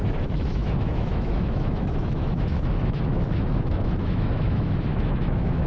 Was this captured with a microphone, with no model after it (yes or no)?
no